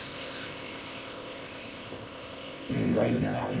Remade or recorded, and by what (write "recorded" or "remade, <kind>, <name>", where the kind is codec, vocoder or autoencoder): remade, codec, ZipCodec